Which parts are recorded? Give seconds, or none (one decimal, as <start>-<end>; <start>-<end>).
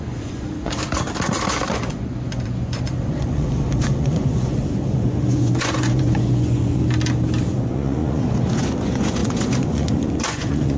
0.8-1.7; 6.8-7.4